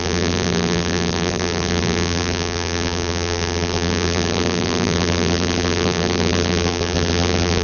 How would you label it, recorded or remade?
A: remade